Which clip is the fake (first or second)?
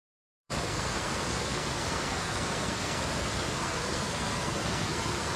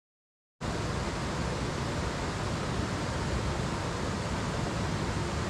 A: first